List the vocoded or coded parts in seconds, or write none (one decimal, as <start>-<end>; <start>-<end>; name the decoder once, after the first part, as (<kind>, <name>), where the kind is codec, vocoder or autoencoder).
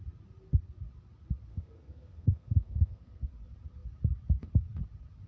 1.5-3.3 (codec, SNAC)